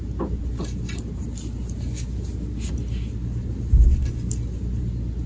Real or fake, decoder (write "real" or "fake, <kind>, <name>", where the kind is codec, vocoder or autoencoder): real